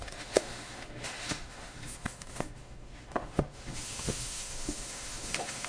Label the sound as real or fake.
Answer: fake